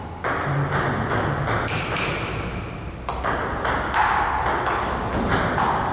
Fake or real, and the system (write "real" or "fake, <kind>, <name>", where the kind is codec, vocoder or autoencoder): real